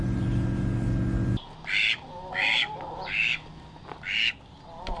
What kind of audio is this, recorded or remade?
recorded